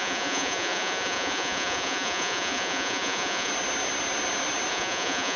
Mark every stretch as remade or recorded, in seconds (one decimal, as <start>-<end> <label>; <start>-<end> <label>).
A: 0.0-3.5 remade; 3.5-4.7 recorded; 4.7-5.4 remade